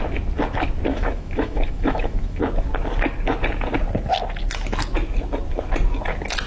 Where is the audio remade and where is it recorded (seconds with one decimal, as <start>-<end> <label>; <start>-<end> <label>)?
0.0-0.9 recorded; 0.9-2.4 remade; 2.4-6.5 recorded